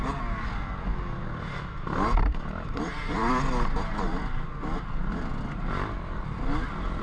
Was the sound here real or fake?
real